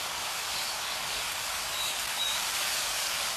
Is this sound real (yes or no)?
no